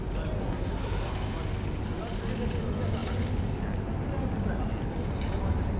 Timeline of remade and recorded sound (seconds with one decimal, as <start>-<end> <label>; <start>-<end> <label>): 0.0-0.4 recorded; 0.4-1.1 remade; 1.1-5.8 recorded